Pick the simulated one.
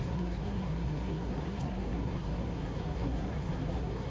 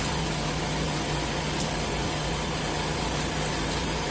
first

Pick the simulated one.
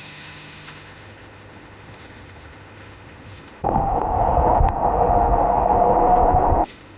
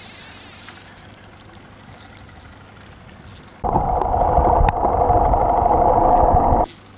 first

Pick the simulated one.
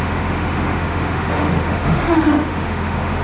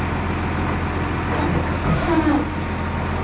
first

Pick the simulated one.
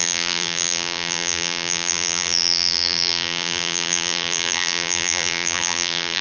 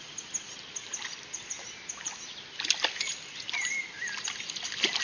first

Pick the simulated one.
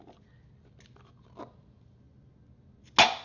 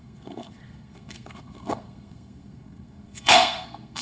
second